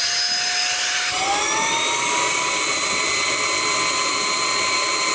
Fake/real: real